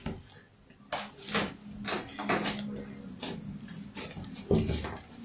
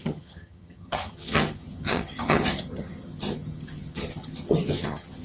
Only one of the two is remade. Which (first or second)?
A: second